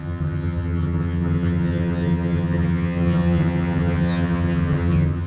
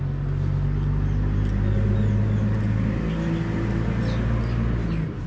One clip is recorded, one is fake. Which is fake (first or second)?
first